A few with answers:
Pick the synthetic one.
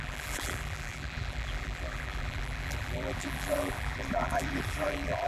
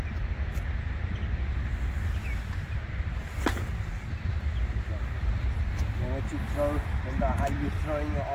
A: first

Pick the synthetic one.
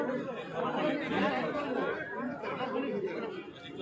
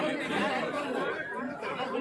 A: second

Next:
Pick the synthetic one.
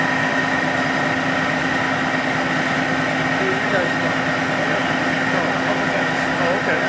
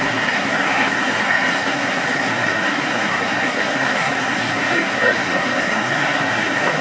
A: second